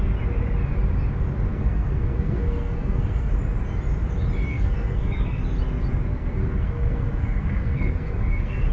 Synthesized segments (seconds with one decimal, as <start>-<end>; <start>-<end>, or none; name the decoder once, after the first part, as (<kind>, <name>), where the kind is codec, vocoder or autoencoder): 1.5-3.3 (codec, SNAC); 4.5-5.4; 6.1-8.7